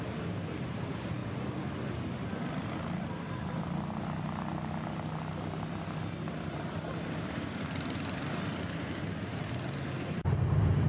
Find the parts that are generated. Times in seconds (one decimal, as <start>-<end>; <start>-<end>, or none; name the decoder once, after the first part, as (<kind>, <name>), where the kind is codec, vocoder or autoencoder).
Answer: 0.0-1.2 (vocoder, BigVGAN v2); 6.5-10.9